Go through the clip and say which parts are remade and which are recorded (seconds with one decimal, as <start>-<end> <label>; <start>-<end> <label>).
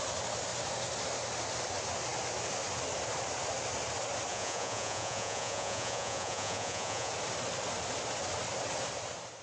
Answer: 0.0-4.3 recorded; 4.3-7.1 remade; 7.1-9.4 recorded